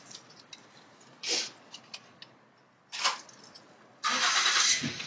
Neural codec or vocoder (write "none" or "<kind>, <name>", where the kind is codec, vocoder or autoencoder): none